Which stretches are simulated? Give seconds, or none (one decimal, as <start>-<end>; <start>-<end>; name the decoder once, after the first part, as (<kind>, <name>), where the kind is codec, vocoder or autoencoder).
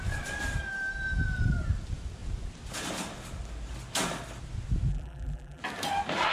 4.9-5.6 (vocoder, BigVGAN v2)